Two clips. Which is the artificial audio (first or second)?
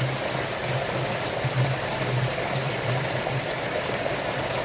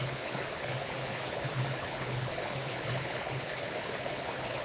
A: second